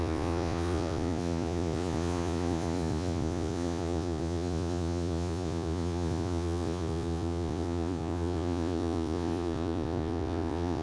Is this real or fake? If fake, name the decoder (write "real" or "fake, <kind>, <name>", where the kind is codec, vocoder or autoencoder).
fake, vocoder, Vocos